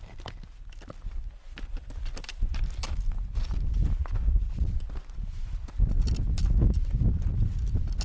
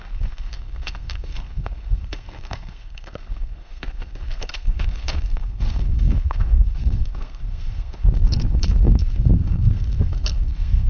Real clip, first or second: first